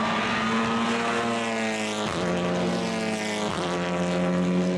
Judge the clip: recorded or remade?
recorded